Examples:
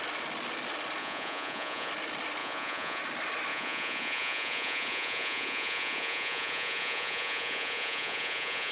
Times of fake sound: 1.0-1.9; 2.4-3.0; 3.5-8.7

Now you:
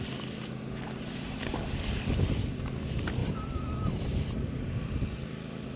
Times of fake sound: none

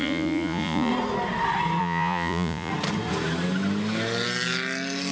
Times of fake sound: 0.0-0.9; 1.8-2.7

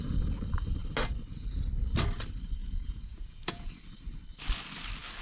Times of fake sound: 2.6-3.7